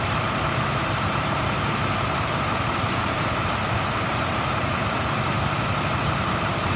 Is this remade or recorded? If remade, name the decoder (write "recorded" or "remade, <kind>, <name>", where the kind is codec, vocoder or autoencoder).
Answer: remade, vocoder, BigVGAN v2